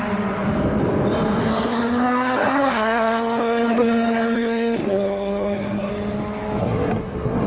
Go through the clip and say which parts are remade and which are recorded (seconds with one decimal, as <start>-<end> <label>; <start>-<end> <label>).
0.0-1.4 recorded; 1.4-5.9 remade; 5.9-6.6 recorded; 6.6-7.5 remade